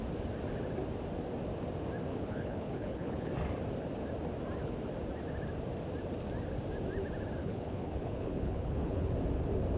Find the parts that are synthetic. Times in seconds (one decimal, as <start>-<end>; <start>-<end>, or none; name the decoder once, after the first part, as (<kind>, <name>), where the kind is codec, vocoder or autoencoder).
2.1-3.3 (codec, HILCodec); 7.4-9.1